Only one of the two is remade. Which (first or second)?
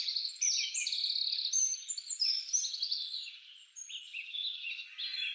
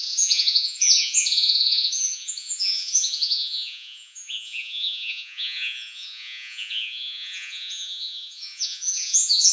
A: second